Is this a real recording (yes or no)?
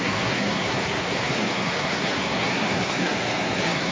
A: no